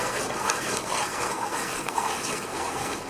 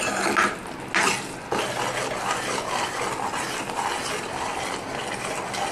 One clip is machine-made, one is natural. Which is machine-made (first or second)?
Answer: first